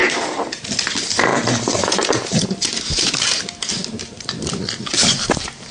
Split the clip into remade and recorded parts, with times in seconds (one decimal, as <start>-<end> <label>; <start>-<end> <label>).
0.0-0.6 remade; 0.6-1.3 recorded; 1.3-3.1 remade; 3.1-5.7 recorded